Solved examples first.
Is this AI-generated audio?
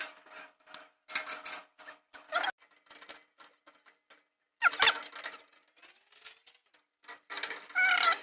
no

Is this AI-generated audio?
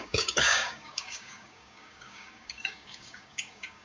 yes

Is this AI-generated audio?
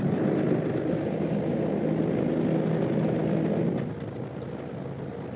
no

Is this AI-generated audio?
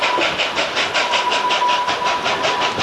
yes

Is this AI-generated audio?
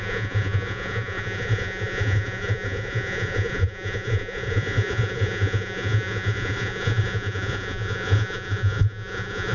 yes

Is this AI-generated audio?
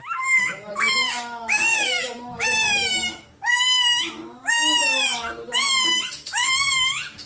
yes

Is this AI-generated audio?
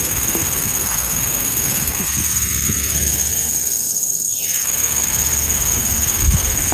yes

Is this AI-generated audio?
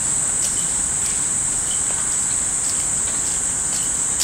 no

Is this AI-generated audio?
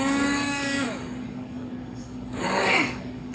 yes